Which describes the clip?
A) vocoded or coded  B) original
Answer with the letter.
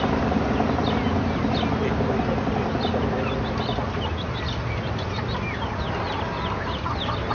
B